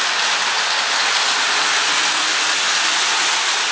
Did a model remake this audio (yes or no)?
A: no